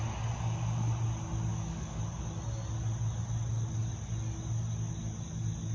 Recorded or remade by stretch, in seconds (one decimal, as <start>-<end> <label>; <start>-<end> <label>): 0.0-1.5 recorded; 1.5-2.0 remade; 2.0-5.7 recorded